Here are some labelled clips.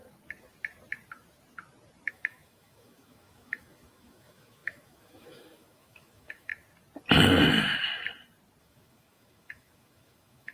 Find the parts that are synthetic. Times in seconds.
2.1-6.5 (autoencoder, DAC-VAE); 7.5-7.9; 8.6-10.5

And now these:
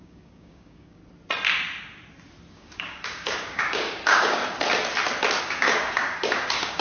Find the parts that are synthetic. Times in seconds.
0.0-1.0 (codec, DAC); 2.5-4.4; 5.4-6.8

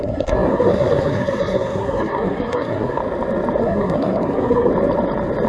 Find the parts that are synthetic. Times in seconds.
0.0-3.0 (codec, SNAC); 3.6-4.7

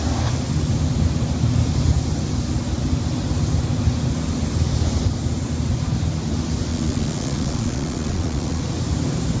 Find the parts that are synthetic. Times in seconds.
6.7-8.6 (vocoder, Vocos)

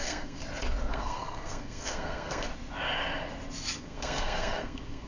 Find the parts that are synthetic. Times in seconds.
0.0-0.4 (codec, SNAC); 0.9-2.5; 3.8-5.1

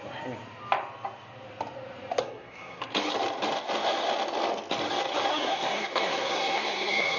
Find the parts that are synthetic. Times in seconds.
2.2-2.8 (codec, SNAC); 5.3-7.2

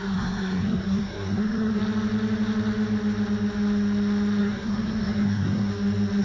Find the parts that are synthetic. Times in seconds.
0.0-1.8 (codec, SNAC); 4.4-5.7

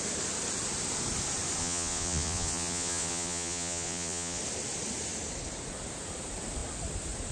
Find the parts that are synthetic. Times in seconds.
1.6-4.4 (vocoder, Vocos)